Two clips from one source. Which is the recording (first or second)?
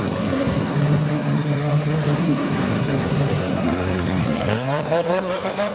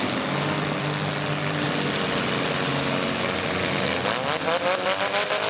second